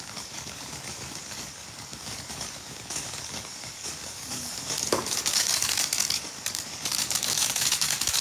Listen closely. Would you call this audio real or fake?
fake